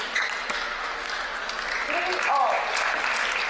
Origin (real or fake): real